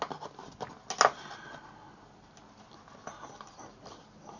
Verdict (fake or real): real